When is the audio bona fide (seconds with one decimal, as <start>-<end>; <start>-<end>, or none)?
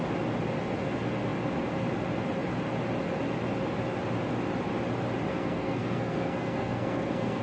0.0-5.3